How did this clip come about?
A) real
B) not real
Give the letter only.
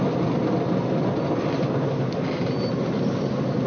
A